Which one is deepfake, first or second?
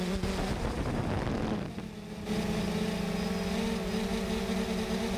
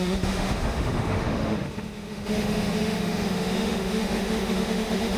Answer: second